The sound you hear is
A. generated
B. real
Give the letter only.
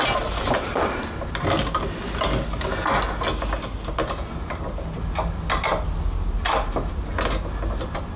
B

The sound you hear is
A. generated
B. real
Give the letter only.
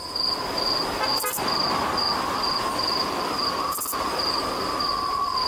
B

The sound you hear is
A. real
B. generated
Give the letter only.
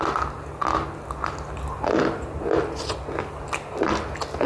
A